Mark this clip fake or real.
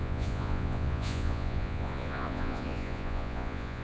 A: fake